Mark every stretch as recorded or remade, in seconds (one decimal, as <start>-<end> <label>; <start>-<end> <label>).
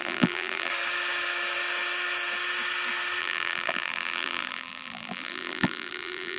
0.0-0.7 remade; 0.7-3.2 recorded; 3.2-6.4 remade